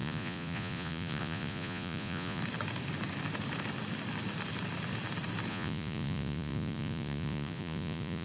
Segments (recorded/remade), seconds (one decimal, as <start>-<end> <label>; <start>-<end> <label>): 0.0-2.4 remade; 2.4-5.5 recorded; 5.5-8.2 remade